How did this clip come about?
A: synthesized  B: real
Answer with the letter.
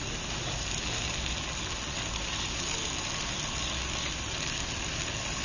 B